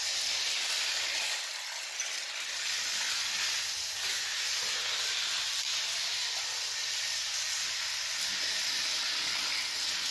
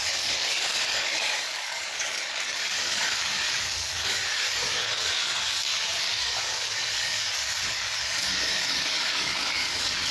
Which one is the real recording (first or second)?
first